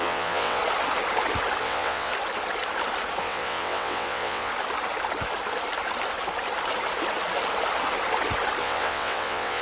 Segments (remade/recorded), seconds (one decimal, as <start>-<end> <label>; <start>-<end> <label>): 0.0-0.6 remade; 0.6-1.6 recorded; 1.6-2.1 remade; 2.1-3.2 recorded; 3.2-4.5 remade; 4.5-8.6 recorded; 8.6-9.6 remade